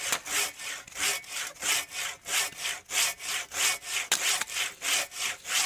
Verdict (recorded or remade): recorded